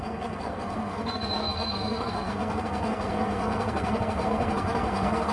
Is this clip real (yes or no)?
no